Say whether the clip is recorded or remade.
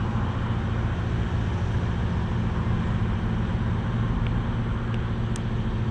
recorded